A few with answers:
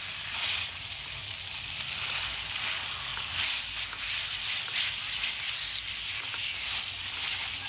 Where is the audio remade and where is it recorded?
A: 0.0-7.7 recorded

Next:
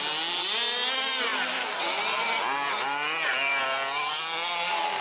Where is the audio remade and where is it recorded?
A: 0.0-5.0 recorded

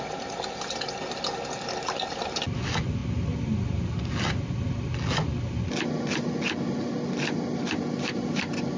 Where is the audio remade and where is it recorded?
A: 0.0-8.8 recorded

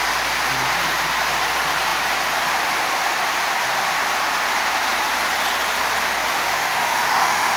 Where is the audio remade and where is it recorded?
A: 0.0-6.3 recorded; 6.3-7.6 remade

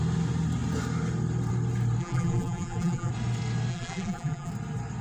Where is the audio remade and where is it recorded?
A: 0.0-2.0 recorded; 2.0-3.1 remade; 3.1-3.7 recorded; 3.7-4.5 remade; 4.5-5.0 recorded